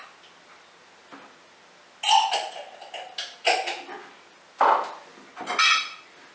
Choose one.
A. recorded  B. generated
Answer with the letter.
A